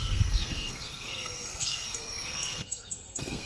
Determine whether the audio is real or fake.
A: fake